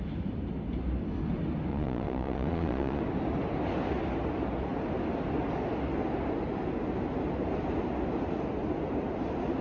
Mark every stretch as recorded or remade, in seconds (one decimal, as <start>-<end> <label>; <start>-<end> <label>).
0.0-1.7 recorded; 1.7-3.0 remade; 3.0-9.6 recorded